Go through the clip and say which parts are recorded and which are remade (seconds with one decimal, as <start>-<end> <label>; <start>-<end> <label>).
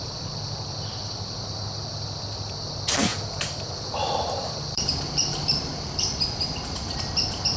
0.0-3.1 recorded; 3.1-6.2 remade; 6.2-7.6 recorded